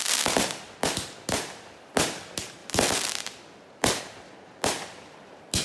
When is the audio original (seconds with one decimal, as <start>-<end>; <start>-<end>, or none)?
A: 0.0-2.6; 4.0-5.6